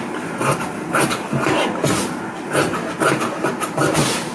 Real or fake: real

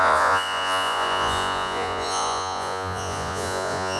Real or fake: fake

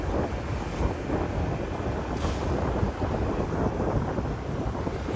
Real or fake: real